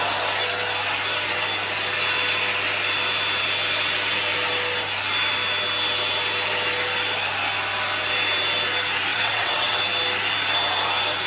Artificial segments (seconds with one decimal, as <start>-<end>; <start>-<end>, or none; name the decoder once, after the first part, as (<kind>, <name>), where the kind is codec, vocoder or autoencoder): 9.1-9.8 (vocoder, WaveNeXt)